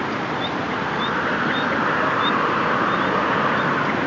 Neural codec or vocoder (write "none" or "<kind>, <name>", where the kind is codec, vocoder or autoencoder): none